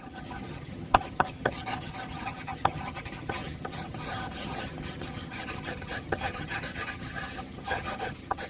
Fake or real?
fake